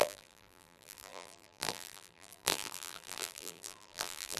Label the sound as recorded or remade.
remade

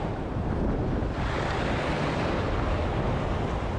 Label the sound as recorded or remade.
recorded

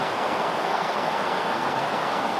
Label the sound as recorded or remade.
remade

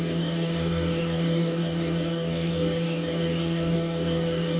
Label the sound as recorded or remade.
remade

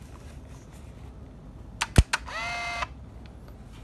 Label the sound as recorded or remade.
recorded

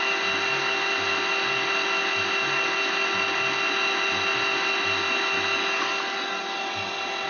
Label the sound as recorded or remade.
recorded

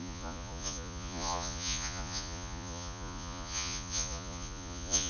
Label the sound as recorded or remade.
remade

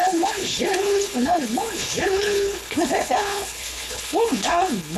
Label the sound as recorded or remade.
remade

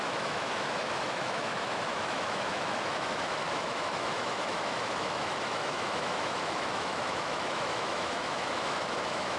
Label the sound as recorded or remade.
remade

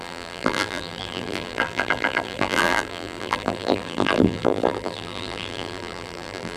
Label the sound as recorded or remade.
remade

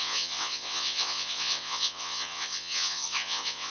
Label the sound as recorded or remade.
remade